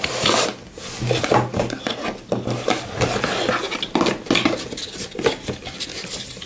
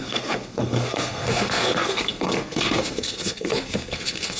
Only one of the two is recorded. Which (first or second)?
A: first